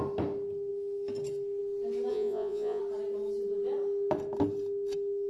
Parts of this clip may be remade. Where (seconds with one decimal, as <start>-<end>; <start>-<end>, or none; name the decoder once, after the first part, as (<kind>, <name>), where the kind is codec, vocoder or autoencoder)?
2.1-2.8 (vocoder, Vocos)